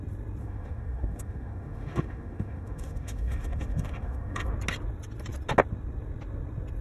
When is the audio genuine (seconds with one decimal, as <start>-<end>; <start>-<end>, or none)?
0.0-0.4; 4.5-6.8